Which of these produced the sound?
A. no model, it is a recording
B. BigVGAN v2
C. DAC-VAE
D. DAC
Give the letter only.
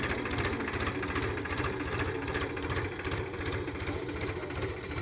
A